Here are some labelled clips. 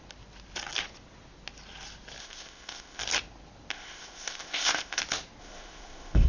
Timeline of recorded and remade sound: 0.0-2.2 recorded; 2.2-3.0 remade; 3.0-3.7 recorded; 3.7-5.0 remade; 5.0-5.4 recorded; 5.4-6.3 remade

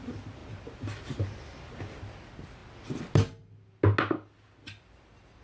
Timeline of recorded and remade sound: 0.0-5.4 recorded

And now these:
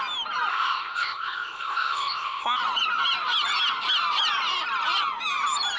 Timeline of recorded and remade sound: 0.0-0.5 recorded; 0.5-2.6 remade; 2.6-5.8 recorded

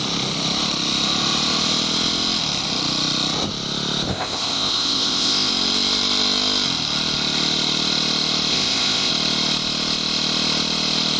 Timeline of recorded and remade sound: 0.0-4.1 recorded; 4.1-5.5 remade; 5.5-8.5 recorded; 8.5-9.1 remade; 9.1-11.2 recorded

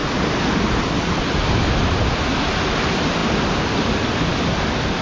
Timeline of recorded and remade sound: 0.0-5.0 recorded